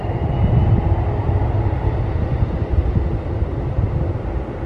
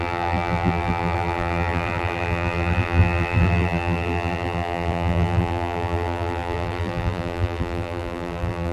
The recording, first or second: first